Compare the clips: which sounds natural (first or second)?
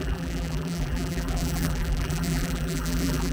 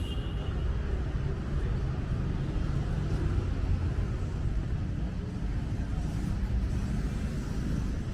second